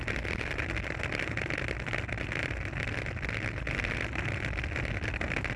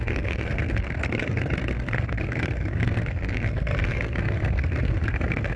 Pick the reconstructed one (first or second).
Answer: second